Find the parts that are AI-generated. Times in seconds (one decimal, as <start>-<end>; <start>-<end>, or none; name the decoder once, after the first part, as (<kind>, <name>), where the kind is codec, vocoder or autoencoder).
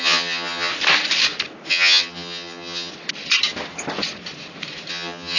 0.0-0.7 (vocoder, HiFi-GAN); 1.7-2.9; 4.9-5.4